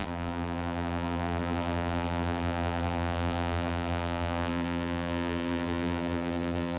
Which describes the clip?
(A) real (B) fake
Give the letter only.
B